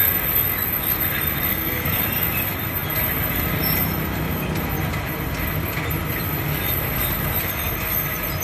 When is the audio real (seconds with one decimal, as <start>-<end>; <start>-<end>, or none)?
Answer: 0.0-1.5; 2.0-8.4